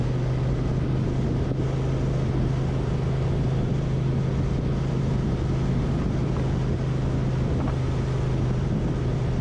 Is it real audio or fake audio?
real